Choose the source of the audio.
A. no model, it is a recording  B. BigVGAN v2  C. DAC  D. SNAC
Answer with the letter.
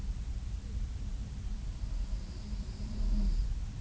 B